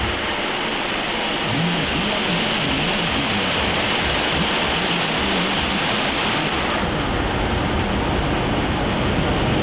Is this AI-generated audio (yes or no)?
no